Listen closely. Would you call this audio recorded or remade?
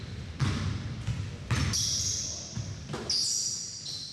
recorded